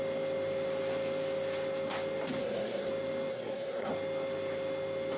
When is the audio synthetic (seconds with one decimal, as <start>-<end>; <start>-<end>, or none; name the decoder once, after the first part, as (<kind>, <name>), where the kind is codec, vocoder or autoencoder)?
2.4-2.9 (codec, SNAC); 3.3-3.9